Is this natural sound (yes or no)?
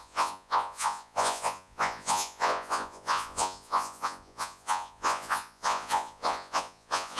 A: no